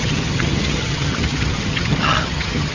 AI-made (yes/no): yes